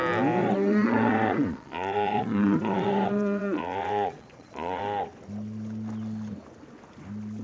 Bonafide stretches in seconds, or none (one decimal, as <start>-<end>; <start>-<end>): 0.0-0.4; 4.8-7.4